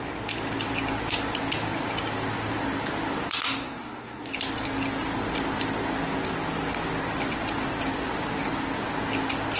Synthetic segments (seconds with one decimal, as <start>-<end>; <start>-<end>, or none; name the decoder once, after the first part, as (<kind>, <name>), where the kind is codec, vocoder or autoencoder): 3.6-4.3 (codec, SNAC)